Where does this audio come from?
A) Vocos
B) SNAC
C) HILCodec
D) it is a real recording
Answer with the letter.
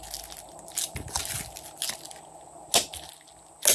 D